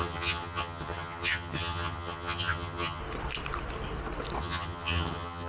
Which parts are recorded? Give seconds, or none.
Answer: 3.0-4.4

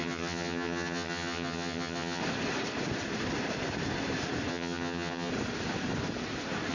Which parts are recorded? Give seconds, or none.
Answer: 2.2-4.5; 5.3-6.7

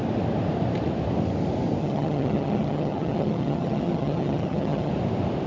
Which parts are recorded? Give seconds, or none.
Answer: 0.0-1.8; 4.9-5.5

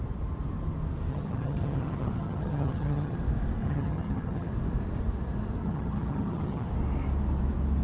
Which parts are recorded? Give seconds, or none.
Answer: 0.0-1.1; 3.2-3.6; 4.5-5.6; 6.7-7.8

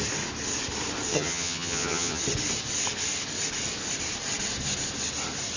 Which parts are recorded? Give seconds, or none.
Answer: 0.0-1.1; 2.2-5.6

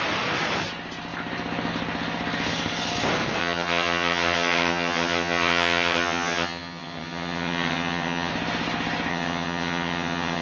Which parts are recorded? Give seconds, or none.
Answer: 0.0-3.4; 8.3-9.1